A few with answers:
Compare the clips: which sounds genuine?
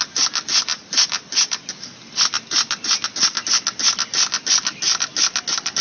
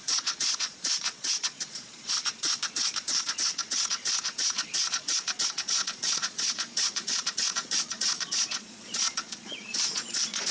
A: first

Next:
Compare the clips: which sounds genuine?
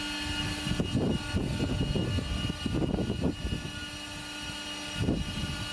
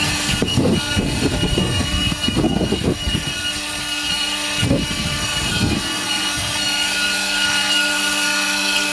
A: first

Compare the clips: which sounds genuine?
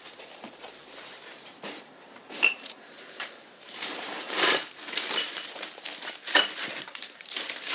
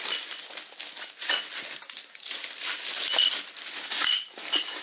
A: second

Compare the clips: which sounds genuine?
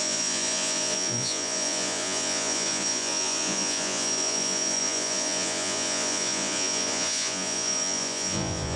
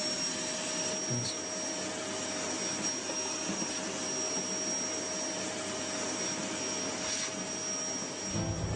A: second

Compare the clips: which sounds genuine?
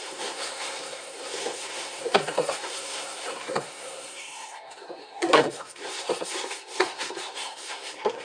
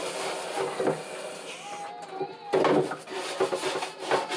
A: second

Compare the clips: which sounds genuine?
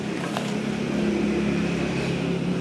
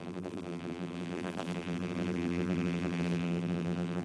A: first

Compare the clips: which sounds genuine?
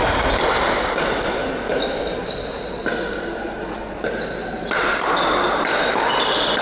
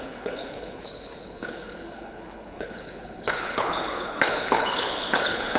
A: first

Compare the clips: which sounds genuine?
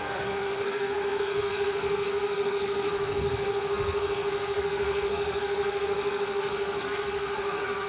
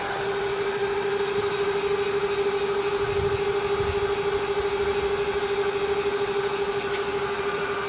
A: second